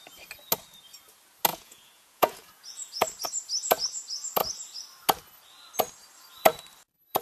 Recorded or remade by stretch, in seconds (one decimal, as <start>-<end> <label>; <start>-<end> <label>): 0.0-1.5 recorded; 1.5-3.0 remade; 3.0-7.2 recorded